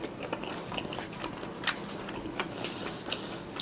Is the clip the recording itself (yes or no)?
yes